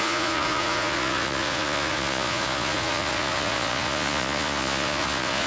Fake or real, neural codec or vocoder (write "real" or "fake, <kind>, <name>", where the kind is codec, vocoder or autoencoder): fake, vocoder, Vocos